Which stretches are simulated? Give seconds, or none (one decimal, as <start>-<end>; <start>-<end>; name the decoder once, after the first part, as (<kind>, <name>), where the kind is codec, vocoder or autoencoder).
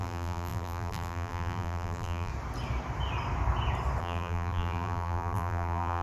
0.0-2.3 (vocoder, BigVGAN v2); 4.0-6.0